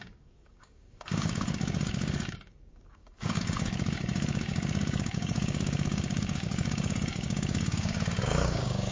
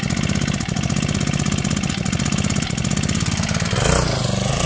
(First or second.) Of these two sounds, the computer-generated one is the first